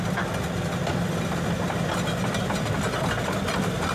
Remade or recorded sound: recorded